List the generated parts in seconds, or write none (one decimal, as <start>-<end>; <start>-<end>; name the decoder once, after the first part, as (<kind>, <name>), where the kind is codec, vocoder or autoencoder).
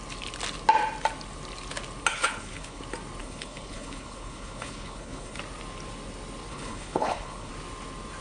2.1-2.8 (codec, HILCodec); 3.2-5.4; 6.5-7.5